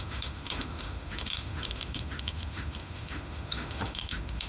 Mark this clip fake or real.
fake